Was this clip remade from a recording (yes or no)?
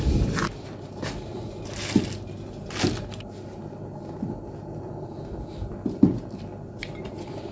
no